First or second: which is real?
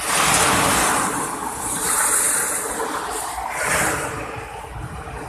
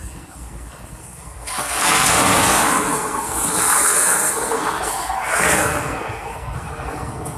first